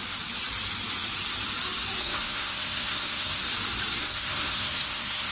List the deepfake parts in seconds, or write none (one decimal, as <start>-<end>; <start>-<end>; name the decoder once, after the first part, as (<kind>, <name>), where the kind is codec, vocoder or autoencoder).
2.0-3.4 (codec, SNAC); 4.0-5.3